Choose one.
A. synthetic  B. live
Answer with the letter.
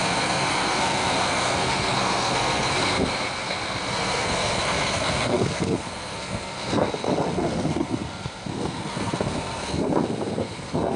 A